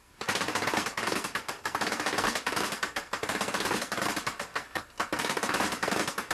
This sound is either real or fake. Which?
fake